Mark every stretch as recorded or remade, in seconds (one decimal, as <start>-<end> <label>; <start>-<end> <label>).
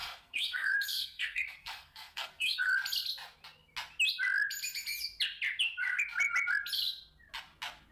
0.0-2.7 remade; 2.7-7.9 recorded